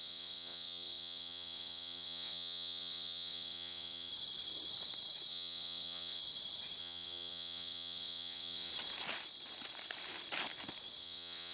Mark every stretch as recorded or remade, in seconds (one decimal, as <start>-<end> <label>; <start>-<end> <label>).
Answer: 0.0-4.1 remade; 4.1-5.3 recorded; 5.3-6.2 remade; 6.2-6.8 recorded; 6.8-8.7 remade; 8.7-11.0 recorded; 11.0-11.5 remade

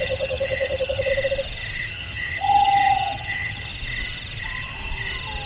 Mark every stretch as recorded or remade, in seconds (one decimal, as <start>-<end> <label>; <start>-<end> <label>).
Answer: 0.0-1.1 remade; 1.1-1.9 recorded; 1.9-3.7 remade; 3.7-5.5 recorded

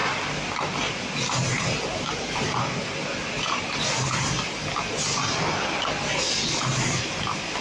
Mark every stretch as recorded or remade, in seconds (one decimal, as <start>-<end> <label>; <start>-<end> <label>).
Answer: 0.0-7.6 recorded

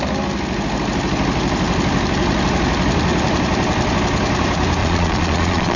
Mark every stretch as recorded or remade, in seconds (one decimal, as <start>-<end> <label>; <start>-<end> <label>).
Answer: 0.0-4.8 recorded; 4.8-5.8 remade

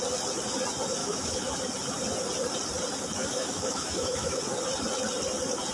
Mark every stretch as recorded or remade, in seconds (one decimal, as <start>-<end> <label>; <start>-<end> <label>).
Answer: 0.0-1.0 recorded; 1.0-1.5 remade; 1.5-3.2 recorded; 3.2-4.4 remade; 4.4-5.7 recorded

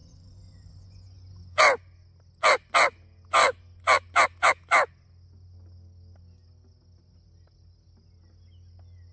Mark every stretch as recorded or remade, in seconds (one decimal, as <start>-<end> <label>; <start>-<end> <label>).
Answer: 0.0-1.6 remade; 1.6-9.1 recorded

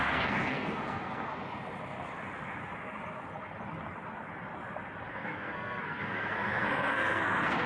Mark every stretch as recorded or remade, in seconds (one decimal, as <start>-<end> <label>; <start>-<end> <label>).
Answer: 0.0-1.3 remade; 1.3-5.1 recorded; 5.1-7.7 remade

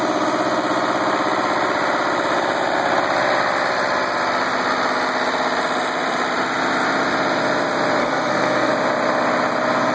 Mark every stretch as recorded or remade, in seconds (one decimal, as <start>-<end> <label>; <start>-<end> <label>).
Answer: 0.0-8.0 recorded; 8.0-8.7 remade; 8.7-9.9 recorded